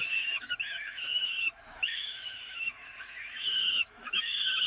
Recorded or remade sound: remade